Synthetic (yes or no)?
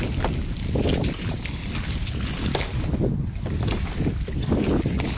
no